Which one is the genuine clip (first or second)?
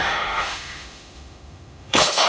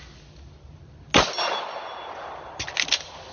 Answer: second